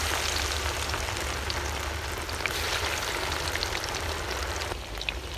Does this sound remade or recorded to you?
recorded